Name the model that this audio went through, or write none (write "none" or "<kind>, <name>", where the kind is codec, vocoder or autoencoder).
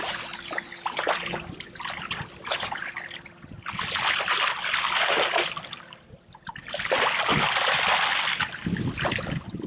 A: none